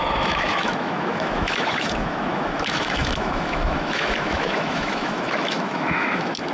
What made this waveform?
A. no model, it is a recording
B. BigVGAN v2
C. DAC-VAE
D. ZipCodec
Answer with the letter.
C